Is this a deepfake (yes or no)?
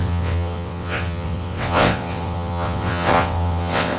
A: yes